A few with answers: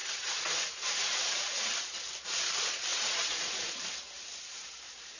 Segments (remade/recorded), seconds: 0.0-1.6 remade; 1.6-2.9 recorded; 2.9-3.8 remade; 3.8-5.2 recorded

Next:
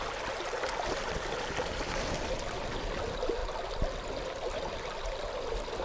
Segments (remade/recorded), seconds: 0.0-5.8 recorded

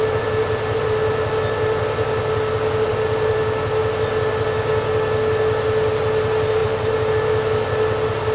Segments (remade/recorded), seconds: 0.0-6.6 recorded; 6.6-7.1 remade; 7.1-8.3 recorded

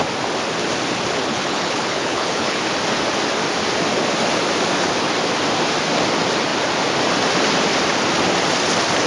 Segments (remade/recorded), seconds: 0.0-1.3 recorded; 1.3-2.6 remade; 2.6-9.1 recorded

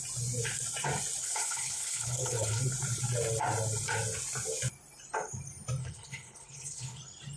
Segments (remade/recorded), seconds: 0.0-1.2 recorded; 1.2-2.6 remade; 2.6-5.8 recorded; 5.8-7.0 remade; 7.0-7.4 recorded

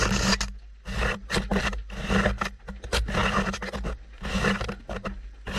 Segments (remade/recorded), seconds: 0.0-5.6 recorded

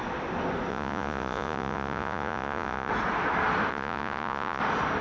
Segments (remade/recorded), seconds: 0.0-0.7 recorded; 0.7-2.9 remade; 2.9-3.7 recorded; 3.7-4.6 remade; 4.6-5.0 recorded

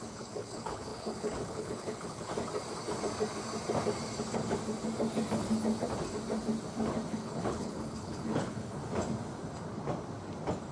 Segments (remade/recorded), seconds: 0.0-2.3 remade; 2.3-7.1 recorded; 7.1-8.8 remade; 8.8-10.7 recorded